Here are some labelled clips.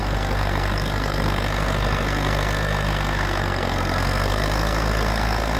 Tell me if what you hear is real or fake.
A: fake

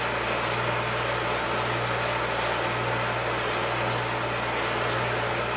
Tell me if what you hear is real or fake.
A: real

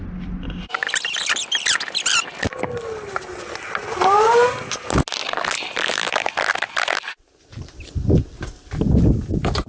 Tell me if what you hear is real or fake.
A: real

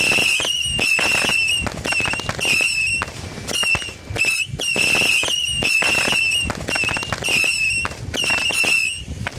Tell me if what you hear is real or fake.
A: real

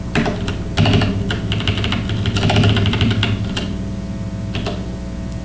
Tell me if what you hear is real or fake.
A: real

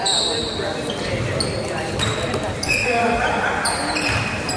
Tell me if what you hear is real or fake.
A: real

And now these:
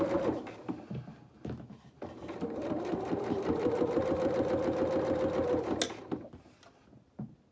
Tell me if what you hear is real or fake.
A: real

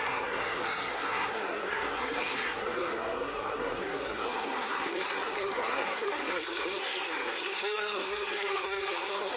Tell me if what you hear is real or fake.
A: fake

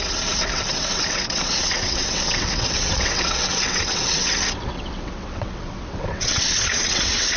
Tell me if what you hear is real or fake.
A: fake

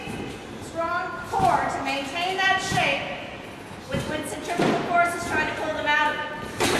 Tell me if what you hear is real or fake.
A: real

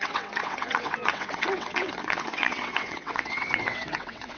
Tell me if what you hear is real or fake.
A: fake